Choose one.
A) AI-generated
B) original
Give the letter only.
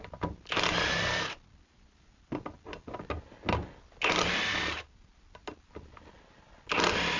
B